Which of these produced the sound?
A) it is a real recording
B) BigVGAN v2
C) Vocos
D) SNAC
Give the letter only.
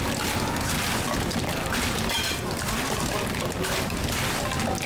A